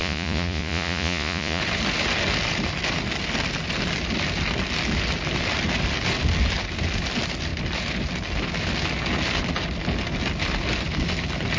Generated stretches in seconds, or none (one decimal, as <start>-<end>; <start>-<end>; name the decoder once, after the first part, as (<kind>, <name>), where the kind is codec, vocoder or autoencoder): 0.0-1.6 (vocoder, Vocos)